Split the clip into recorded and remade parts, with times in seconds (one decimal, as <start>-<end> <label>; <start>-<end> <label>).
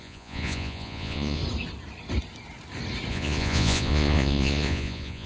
0.0-1.4 remade; 1.4-3.1 recorded; 3.1-5.3 remade